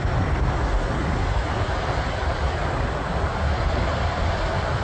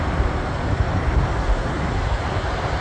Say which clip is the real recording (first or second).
first